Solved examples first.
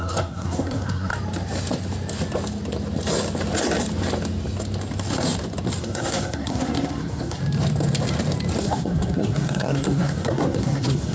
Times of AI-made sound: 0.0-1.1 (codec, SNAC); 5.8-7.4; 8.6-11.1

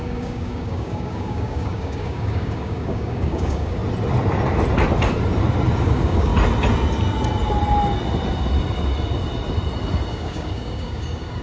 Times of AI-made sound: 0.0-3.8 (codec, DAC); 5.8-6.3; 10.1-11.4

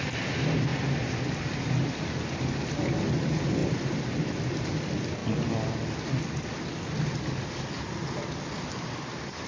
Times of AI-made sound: 3.6-4.2 (vocoder, BigVGAN v2)